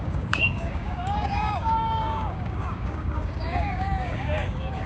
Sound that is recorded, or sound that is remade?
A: remade